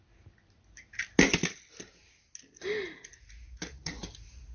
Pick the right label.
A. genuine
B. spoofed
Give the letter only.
A